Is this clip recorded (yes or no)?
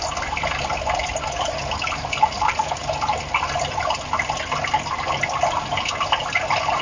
yes